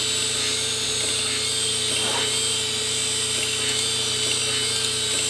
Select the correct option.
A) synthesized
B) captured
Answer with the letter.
B